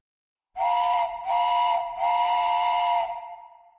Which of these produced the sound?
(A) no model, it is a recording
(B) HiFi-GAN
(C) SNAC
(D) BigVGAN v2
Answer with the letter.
D